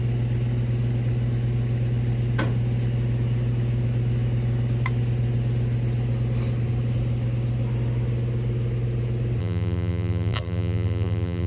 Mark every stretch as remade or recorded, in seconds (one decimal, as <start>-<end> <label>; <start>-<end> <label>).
0.0-9.4 recorded; 9.4-11.5 remade